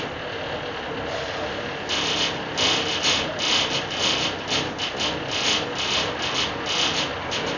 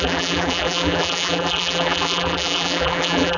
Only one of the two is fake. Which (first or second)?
second